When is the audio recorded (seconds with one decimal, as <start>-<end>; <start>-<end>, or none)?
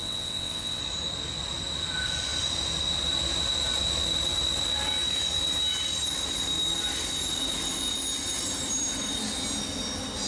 0.8-10.3